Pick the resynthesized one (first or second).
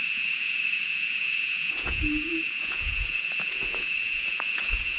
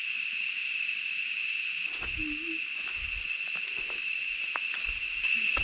first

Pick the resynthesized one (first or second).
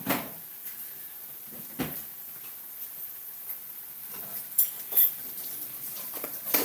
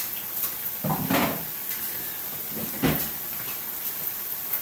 first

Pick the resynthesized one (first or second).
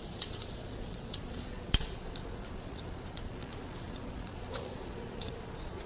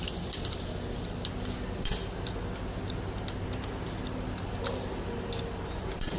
first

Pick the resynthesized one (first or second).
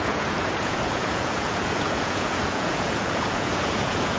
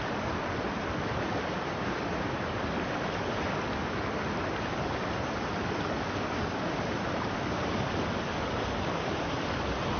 first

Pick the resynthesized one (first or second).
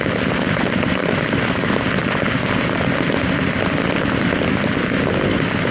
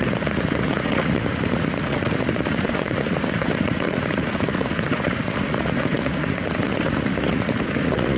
second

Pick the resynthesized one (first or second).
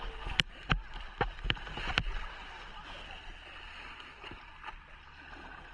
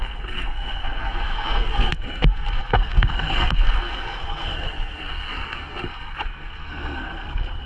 second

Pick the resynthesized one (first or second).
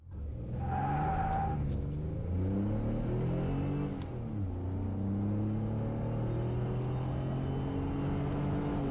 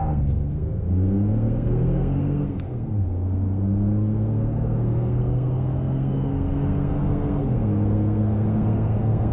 second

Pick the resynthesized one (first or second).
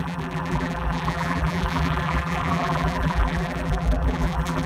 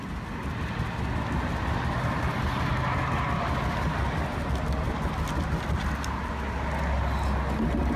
first